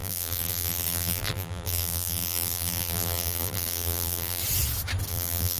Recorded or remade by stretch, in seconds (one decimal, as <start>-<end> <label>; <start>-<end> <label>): 0.0-4.4 remade; 4.4-5.1 recorded; 5.1-5.6 remade